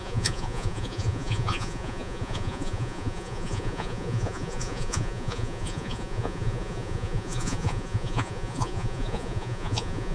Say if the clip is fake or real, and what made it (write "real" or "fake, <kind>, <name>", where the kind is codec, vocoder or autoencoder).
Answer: fake, vocoder, Vocos